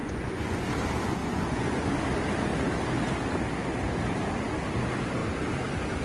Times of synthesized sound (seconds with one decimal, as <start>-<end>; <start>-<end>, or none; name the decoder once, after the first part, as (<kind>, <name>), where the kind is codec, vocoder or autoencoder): 0.0-0.7 (vocoder, Vocos); 1.2-1.9